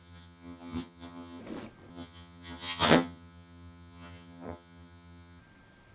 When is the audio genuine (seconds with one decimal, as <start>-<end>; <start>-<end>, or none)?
1.4-1.9; 5.4-5.9